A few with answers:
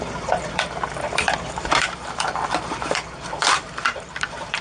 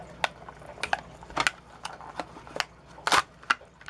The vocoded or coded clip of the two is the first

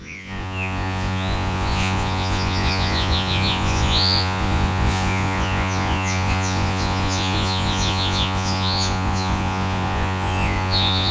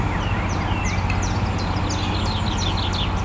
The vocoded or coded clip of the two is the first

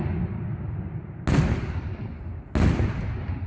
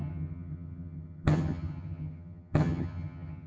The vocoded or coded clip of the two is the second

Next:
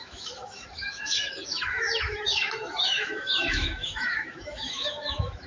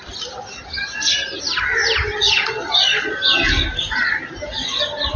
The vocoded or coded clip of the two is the first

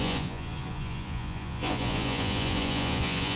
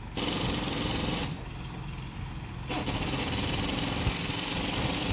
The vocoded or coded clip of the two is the first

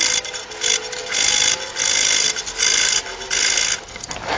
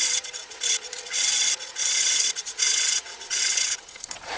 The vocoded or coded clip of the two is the second